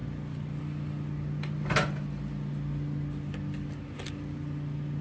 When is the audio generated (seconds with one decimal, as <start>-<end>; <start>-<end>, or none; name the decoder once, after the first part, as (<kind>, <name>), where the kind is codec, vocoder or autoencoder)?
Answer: none